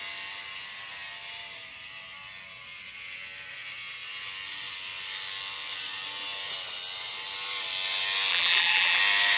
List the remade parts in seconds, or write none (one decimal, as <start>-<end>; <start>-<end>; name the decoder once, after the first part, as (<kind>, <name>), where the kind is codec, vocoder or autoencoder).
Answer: 8.3-9.0 (vocoder, BigVGAN v2)